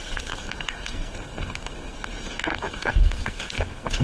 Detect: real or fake fake